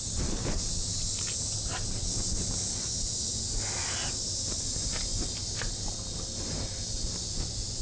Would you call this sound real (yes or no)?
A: yes